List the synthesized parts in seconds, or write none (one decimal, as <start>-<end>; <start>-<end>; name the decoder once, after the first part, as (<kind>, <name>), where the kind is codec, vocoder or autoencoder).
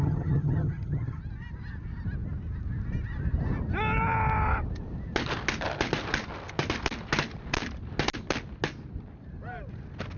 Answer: 0.0-1.2 (vocoder, HiFi-GAN)